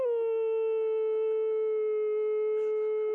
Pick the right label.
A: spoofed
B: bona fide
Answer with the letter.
B